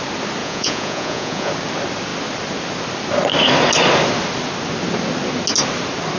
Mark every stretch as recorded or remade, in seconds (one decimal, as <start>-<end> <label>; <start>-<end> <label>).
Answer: 0.0-0.4 recorded; 0.4-1.5 remade; 1.5-6.2 recorded